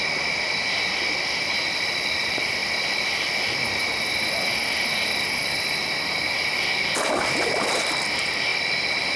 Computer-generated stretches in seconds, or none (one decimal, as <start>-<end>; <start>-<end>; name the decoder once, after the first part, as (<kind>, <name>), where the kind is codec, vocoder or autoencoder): none